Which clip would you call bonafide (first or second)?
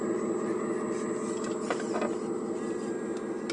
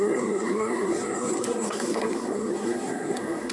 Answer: first